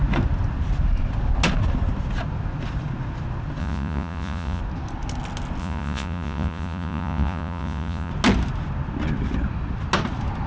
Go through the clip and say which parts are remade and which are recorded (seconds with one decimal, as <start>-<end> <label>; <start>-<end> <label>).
0.0-3.6 recorded; 3.6-4.6 remade; 4.6-5.6 recorded; 5.6-8.1 remade; 8.1-10.5 recorded